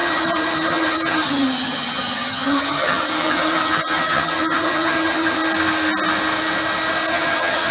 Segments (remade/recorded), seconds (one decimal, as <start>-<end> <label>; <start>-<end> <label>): 0.0-5.4 remade; 5.4-7.1 recorded; 7.1-7.7 remade